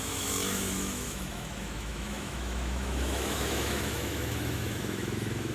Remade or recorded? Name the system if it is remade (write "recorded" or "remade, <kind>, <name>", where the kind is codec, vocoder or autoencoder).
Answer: remade, autoencoder, DAC-VAE